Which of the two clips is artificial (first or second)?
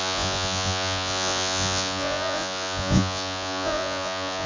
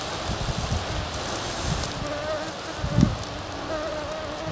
first